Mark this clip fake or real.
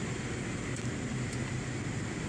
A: fake